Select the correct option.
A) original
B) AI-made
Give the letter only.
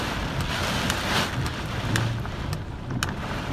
A